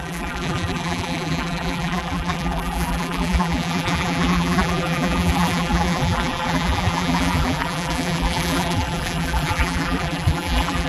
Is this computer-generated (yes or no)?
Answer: yes